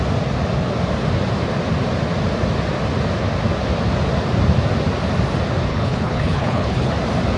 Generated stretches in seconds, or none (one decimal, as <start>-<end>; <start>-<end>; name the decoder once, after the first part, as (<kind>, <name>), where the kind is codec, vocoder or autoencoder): 5.7-6.9 (codec, HILCodec)